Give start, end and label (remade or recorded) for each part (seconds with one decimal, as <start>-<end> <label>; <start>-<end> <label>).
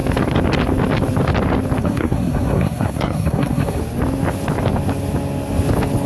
0.0-1.8 recorded; 1.8-3.8 remade; 3.8-6.1 recorded